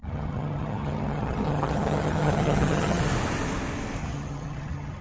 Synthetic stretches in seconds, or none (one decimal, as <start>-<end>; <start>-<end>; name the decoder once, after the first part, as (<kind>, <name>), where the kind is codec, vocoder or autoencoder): 0.0-3.0 (vocoder, HiFi-GAN); 4.0-5.0